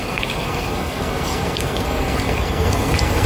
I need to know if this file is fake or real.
fake